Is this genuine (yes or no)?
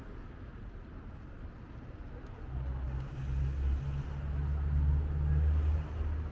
yes